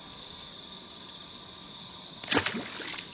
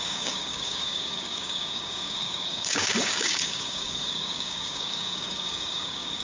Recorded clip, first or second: first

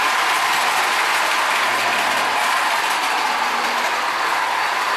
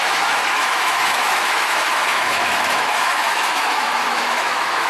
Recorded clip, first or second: first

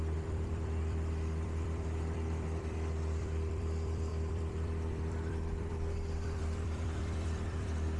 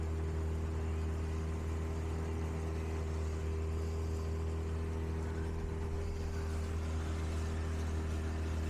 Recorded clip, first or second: second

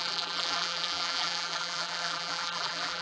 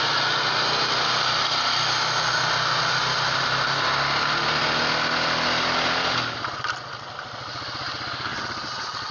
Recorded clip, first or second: second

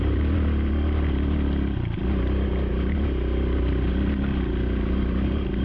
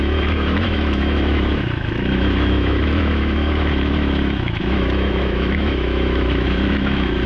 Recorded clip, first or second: first